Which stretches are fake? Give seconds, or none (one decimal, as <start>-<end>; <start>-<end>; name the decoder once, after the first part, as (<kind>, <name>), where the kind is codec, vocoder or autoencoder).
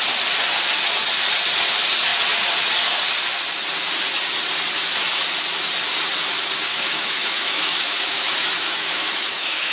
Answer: 6.7-9.7 (autoencoder, DAC-VAE)